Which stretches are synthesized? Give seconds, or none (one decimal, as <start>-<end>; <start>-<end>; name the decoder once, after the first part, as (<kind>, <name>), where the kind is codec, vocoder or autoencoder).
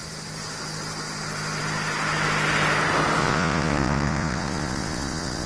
3.2-5.5 (vocoder, Vocos)